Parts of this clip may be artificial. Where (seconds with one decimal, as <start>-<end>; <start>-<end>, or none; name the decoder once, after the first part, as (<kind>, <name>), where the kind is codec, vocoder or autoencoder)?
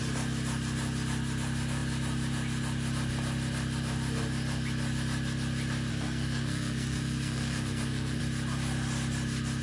5.9-8.2 (codec, SNAC)